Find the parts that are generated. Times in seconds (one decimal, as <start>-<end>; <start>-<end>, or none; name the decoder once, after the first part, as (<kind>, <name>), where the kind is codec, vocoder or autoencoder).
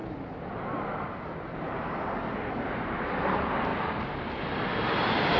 0.0-3.2 (vocoder, BigVGAN v2); 3.7-4.4